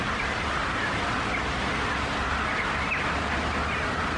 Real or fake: real